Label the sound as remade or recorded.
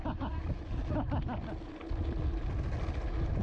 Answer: recorded